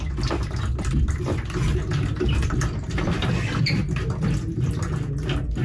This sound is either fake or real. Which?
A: real